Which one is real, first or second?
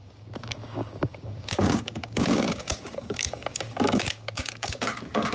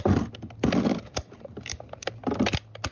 second